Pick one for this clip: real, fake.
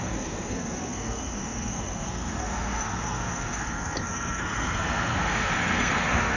fake